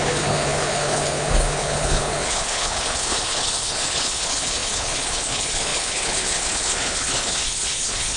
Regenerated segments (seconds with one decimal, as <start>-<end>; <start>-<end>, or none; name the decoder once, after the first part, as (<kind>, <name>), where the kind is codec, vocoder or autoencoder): 0.0-8.2 (codec, HILCodec)